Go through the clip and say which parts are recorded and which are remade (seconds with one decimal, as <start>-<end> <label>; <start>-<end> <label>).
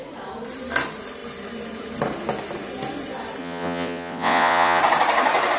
0.0-3.4 recorded; 3.4-4.8 remade; 4.8-5.6 recorded